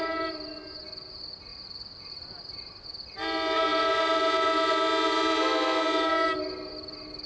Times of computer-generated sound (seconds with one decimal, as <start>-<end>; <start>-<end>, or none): none

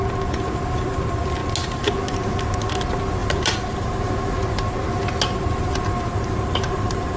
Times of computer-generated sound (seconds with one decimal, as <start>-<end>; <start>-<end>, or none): 3.2-4.4; 6.1-7.2

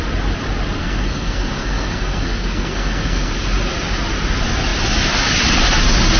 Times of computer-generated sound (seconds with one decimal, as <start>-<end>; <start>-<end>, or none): 0.8-3.3

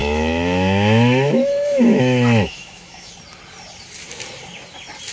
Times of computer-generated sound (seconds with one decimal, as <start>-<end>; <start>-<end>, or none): 0.0-3.1